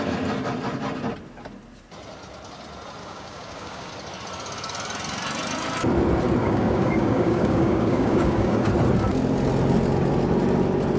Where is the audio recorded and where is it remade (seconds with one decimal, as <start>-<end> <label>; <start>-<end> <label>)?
0.0-3.0 recorded; 3.0-3.9 remade; 3.9-6.4 recorded; 6.4-8.7 remade; 8.7-11.0 recorded